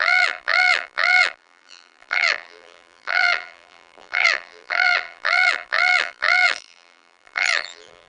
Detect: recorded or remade remade